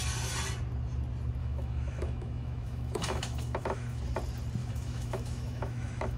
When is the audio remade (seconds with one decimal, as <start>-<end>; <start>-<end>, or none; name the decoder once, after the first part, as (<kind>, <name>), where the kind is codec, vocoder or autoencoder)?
1.4-4.0 (autoencoder, DAC-VAE); 4.6-6.2